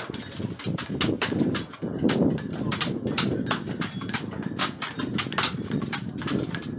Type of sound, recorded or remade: recorded